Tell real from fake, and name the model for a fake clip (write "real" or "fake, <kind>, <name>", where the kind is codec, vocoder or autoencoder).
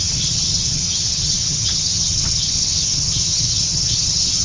fake, vocoder, HiFi-GAN